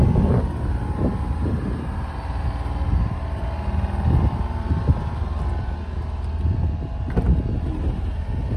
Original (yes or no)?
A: yes